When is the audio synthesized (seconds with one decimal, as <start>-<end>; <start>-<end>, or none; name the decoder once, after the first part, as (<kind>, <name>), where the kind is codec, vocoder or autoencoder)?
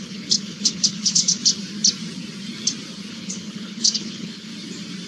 0.0-1.4 (codec, HILCodec); 3.1-4.5